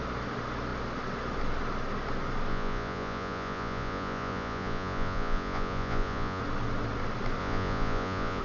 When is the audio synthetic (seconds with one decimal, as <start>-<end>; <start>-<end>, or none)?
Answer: 2.5-6.4; 7.4-8.4